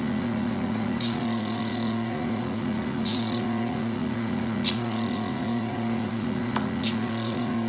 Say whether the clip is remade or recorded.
remade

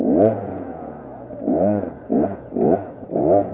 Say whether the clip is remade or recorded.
remade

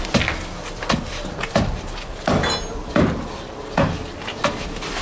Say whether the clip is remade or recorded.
recorded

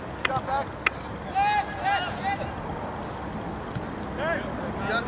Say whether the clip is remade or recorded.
recorded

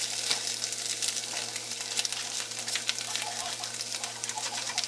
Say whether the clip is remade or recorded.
recorded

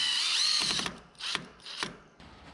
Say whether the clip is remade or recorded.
remade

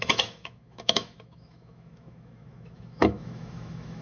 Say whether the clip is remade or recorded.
remade